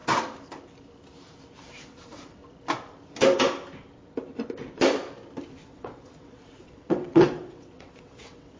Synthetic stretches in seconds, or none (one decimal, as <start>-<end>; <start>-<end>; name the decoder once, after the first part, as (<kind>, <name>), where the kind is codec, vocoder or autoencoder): 1.6-2.4 (vocoder, WaveNeXt); 5.7-8.6

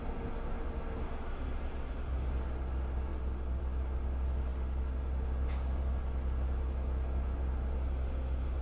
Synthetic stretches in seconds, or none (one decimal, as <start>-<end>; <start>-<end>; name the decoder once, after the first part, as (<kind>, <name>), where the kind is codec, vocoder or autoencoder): none

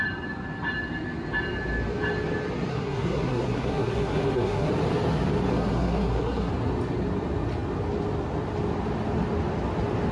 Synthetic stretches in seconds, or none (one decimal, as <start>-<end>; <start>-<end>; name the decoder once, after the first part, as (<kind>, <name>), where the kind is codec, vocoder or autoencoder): 2.7-4.7 (codec, SNAC); 5.5-6.5

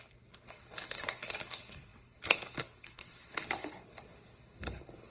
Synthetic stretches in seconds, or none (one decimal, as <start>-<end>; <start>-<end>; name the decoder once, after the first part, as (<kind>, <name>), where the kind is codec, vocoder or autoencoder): 0.0-5.1 (codec, HILCodec)